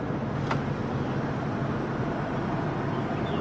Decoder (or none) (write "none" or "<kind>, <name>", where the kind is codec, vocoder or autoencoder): none